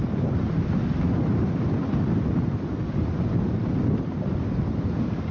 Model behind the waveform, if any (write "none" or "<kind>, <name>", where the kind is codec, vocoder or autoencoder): none